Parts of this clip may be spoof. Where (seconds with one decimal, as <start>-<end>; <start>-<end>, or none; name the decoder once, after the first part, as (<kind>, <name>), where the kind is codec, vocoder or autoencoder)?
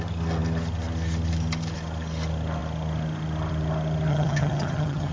4.1-5.1 (vocoder, HiFi-GAN)